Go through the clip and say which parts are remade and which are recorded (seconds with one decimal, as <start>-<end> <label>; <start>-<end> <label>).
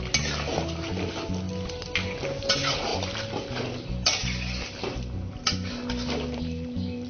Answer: 0.0-7.1 recorded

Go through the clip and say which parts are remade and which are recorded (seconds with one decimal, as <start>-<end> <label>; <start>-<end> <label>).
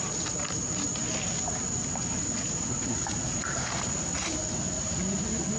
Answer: 0.0-5.6 recorded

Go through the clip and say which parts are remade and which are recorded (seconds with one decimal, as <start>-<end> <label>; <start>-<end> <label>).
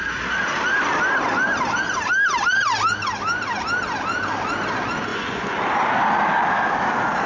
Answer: 0.0-5.1 recorded; 5.1-5.6 remade; 5.6-7.3 recorded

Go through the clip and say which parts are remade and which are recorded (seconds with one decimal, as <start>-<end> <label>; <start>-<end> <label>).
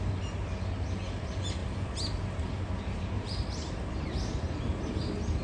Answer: 0.0-5.4 recorded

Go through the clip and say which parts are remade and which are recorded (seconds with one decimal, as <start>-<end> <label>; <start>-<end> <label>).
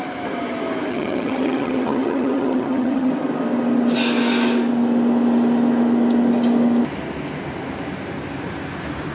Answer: 0.0-0.9 recorded; 0.9-3.1 remade; 3.1-9.1 recorded